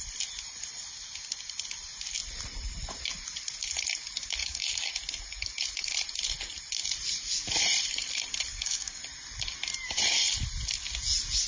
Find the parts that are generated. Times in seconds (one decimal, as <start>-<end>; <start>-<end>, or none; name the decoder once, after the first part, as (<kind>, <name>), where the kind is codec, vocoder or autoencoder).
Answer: 4.4-4.9 (codec, DAC); 8.5-9.0